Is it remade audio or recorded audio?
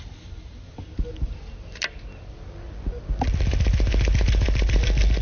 recorded